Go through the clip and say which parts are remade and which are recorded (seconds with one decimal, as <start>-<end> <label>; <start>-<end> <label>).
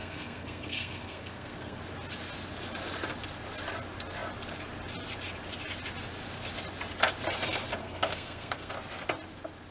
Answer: 0.0-1.8 remade; 1.8-7.8 recorded; 7.8-8.7 remade; 8.7-9.7 recorded